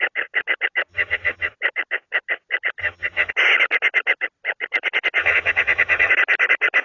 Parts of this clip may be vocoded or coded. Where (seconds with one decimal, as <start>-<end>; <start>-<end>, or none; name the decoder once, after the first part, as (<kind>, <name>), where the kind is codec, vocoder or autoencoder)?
0.9-1.5 (vocoder, HiFi-GAN); 2.8-3.3; 5.2-6.1